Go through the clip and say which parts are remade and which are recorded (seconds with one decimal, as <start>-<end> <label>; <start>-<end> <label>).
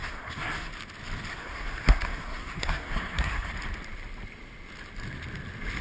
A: 0.0-0.7 remade; 0.7-1.3 recorded; 1.3-3.5 remade; 3.5-5.8 recorded